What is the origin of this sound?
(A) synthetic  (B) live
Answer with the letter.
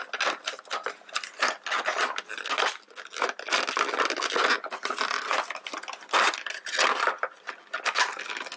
B